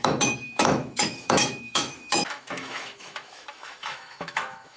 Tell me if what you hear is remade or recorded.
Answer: remade